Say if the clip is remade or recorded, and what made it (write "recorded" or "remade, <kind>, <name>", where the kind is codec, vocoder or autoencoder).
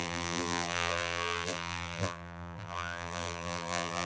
remade, vocoder, BigVGAN v2